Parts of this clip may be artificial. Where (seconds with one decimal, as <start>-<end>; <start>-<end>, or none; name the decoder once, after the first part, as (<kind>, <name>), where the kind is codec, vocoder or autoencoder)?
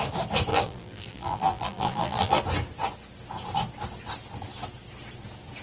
0.5-2.4 (vocoder, BigVGAN v2)